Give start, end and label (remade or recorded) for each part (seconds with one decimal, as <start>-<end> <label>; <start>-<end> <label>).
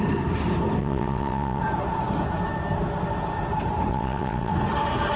0.0-0.8 recorded; 0.8-1.6 remade; 1.6-3.9 recorded; 3.9-4.5 remade; 4.5-5.2 recorded